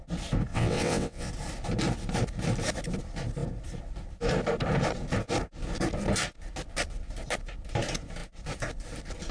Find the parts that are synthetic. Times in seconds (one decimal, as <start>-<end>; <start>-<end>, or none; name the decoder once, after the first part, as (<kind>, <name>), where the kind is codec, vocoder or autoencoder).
0.5-1.3 (vocoder, WaveNeXt)